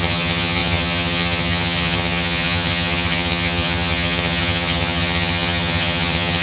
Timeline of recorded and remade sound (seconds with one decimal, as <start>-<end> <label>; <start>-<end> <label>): 0.0-6.4 remade